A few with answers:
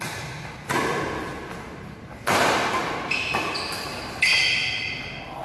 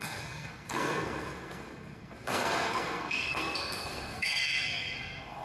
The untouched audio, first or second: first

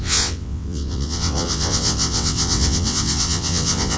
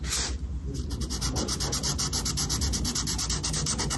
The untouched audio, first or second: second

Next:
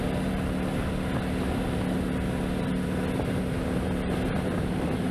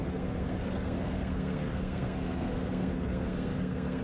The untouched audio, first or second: first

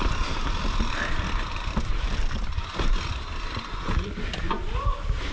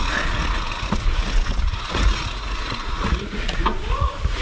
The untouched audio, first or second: first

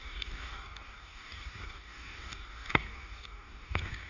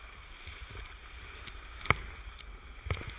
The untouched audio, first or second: second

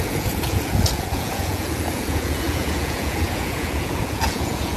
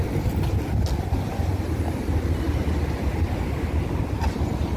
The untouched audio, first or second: second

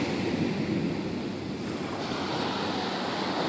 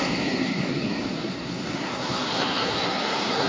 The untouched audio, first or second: first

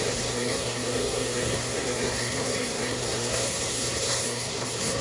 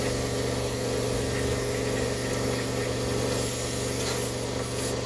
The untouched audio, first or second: second